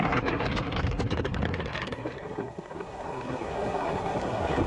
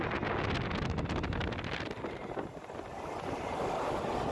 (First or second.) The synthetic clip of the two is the first